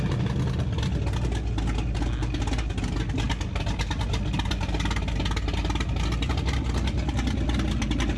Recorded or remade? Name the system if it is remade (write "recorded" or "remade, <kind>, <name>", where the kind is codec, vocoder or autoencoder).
recorded